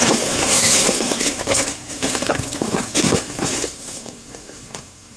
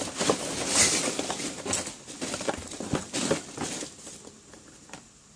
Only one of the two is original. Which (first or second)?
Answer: second